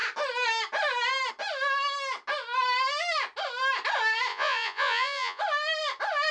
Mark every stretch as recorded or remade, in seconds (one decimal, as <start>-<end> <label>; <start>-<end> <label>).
0.0-4.3 recorded; 4.3-5.4 remade; 5.4-6.3 recorded